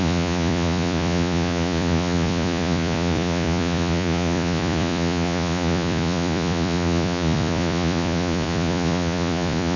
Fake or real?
fake